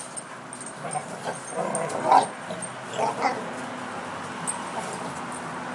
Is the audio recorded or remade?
recorded